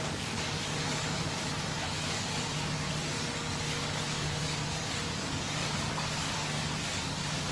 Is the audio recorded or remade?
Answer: remade